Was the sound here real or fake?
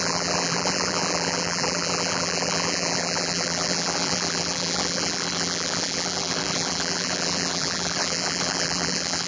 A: fake